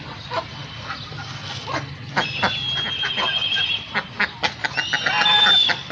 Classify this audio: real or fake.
real